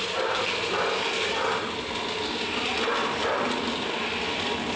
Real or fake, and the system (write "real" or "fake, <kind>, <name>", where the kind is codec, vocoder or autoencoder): real